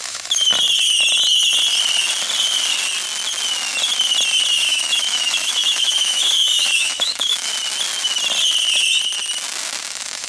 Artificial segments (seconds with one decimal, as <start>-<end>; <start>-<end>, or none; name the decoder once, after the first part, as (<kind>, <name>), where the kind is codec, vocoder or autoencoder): 0.0-0.5 (autoencoder, DAC-VAE); 4.5-7.5; 9.9-10.3